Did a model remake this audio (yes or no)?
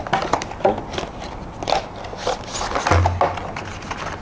no